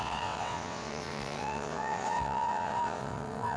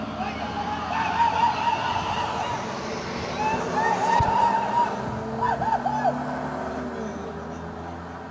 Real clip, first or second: second